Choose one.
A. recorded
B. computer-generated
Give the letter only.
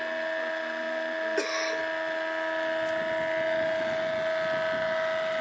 A